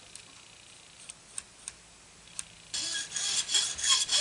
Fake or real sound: real